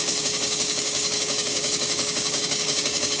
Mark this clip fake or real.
fake